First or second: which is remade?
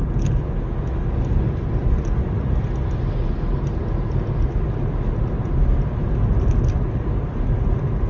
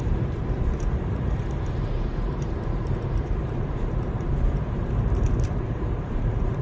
second